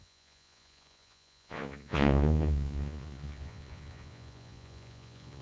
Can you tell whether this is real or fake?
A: fake